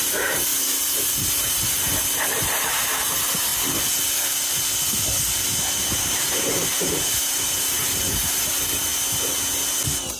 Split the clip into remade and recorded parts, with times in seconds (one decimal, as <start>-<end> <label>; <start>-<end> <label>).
0.0-3.5 remade; 3.5-5.9 recorded; 5.9-8.9 remade; 8.9-10.2 recorded